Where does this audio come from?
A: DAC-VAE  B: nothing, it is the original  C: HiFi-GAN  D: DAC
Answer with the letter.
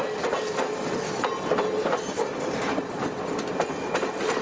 B